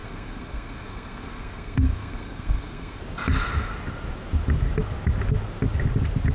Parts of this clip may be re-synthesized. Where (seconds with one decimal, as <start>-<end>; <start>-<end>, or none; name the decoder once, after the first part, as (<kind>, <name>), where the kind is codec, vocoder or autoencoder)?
0.0-3.0 (codec, SNAC)